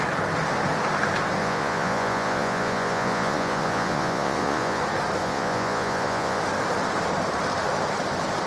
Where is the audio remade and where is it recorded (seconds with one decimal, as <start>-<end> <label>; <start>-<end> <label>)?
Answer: 0.0-1.4 recorded; 1.4-4.8 remade; 4.8-5.2 recorded; 5.2-6.4 remade; 6.4-8.5 recorded